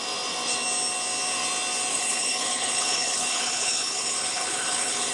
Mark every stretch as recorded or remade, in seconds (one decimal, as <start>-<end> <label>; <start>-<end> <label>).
0.0-1.9 recorded; 1.9-5.1 remade